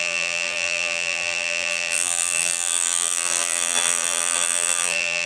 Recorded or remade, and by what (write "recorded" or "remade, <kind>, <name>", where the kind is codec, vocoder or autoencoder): remade, vocoder, BigVGAN v2